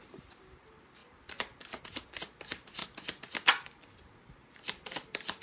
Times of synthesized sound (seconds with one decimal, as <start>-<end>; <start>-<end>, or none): 0.0-1.0; 1.8-2.8; 3.9-5.4